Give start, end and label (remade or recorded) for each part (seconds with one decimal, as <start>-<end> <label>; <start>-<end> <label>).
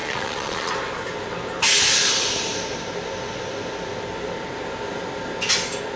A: 0.0-0.7 remade; 0.7-6.0 recorded